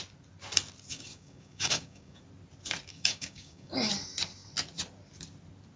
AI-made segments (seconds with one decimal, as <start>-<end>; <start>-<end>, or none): 0.9-2.2; 2.9-3.9